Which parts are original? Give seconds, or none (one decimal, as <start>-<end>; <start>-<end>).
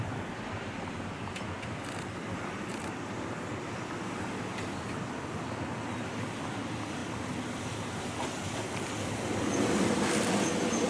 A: 0.0-2.7; 3.5-10.9